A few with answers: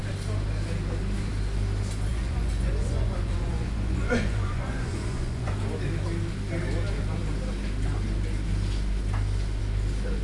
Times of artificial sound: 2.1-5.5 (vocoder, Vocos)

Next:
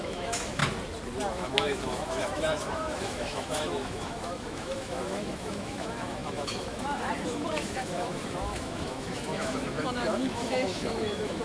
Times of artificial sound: 0.0-0.6 (autoencoder, DAC-VAE); 1.3-11.4

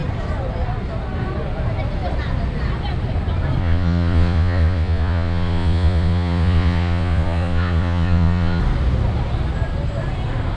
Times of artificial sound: 3.6-8.6 (vocoder, Vocos)

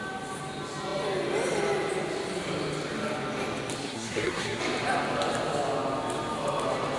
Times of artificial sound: 3.8-4.6 (codec, SNAC)

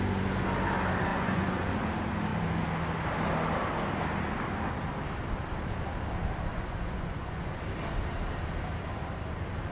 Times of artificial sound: 1.1-1.8 (vocoder, Vocos); 6.5-7.6

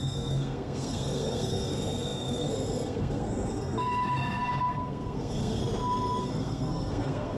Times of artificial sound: 0.0-5.6 (codec, SNAC); 6.2-7.4

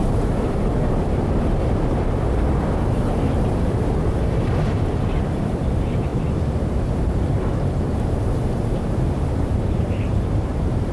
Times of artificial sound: 0.0-1.1 (vocoder, BigVGAN v2); 3.5-10.9

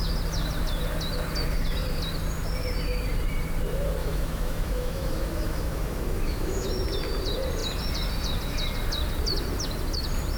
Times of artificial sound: 4.0-6.7 (autoencoder, DAC-VAE)